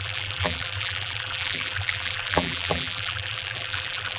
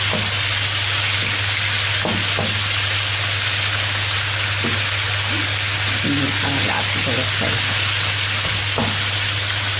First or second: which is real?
second